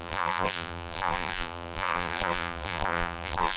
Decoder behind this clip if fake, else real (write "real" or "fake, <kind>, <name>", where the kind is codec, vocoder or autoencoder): fake, vocoder, BigVGAN v2